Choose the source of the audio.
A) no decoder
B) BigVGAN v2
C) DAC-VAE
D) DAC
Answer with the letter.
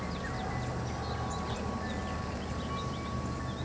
A